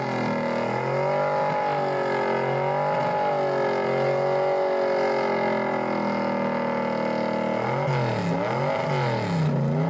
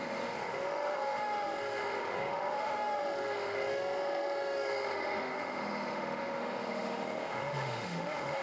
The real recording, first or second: first